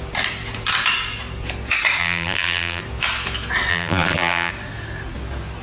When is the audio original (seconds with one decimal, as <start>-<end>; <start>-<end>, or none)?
0.0-2.0; 2.8-3.7; 4.5-5.6